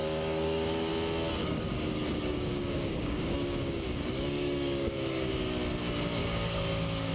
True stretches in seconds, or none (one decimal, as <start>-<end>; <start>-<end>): 0.9-1.4; 5.3-6.2